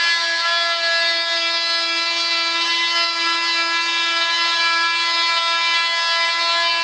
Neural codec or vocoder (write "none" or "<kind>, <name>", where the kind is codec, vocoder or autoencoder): none